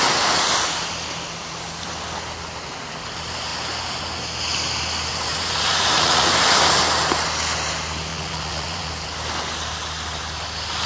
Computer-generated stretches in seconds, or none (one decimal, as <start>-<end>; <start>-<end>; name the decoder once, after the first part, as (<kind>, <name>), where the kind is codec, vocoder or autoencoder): 5.3-6.3 (vocoder, Vocos); 8.1-8.9